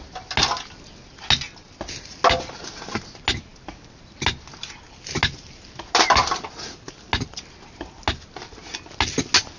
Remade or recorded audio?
recorded